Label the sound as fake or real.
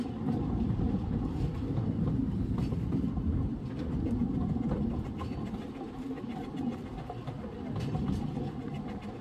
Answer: real